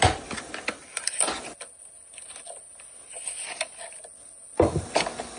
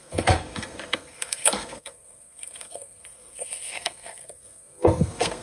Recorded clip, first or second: first